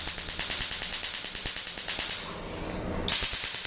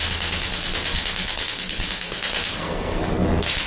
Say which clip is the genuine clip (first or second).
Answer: first